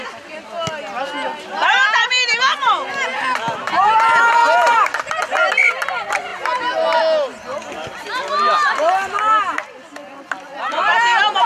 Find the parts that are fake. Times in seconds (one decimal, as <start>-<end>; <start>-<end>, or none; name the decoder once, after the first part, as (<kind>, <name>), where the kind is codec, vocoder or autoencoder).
none